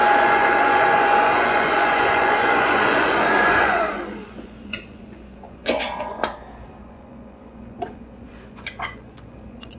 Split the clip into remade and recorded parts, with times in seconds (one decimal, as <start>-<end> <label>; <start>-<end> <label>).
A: 0.0-6.2 remade; 6.2-6.8 recorded; 6.8-9.8 remade